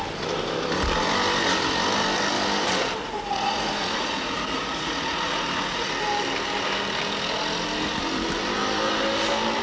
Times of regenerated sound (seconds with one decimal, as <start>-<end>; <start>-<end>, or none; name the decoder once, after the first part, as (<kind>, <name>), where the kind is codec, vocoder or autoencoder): 3.0-5.9 (vocoder, Vocos)